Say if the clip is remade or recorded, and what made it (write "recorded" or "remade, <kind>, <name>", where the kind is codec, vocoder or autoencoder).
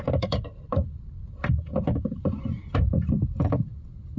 remade, vocoder, BigVGAN v2